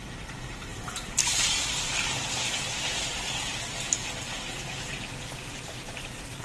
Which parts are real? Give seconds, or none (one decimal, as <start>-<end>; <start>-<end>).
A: 3.1-5.5